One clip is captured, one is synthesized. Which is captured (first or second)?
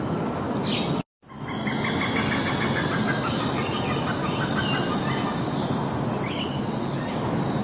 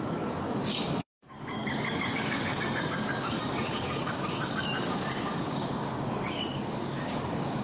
first